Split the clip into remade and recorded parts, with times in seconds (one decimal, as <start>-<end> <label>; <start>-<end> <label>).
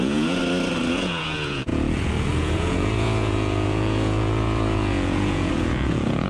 0.0-0.4 remade; 0.4-0.9 recorded; 0.9-6.3 remade